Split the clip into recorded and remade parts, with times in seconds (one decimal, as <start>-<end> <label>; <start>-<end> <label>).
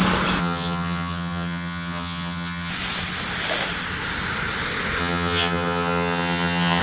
0.0-0.4 recorded; 0.4-2.7 remade; 2.7-5.0 recorded; 5.0-6.8 remade